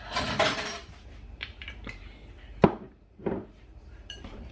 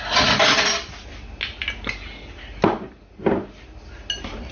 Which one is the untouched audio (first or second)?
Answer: second